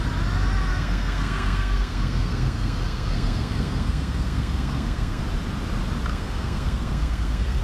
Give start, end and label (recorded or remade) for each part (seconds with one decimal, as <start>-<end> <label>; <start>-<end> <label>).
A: 0.0-0.7 recorded; 0.7-5.2 remade; 5.2-6.1 recorded; 6.1-7.6 remade